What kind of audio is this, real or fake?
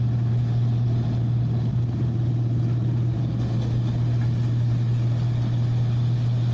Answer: real